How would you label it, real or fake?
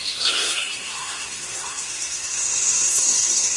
fake